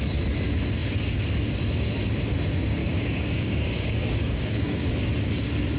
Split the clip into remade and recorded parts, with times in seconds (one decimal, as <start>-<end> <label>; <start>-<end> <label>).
0.0-2.8 recorded; 2.8-4.9 remade; 4.9-5.8 recorded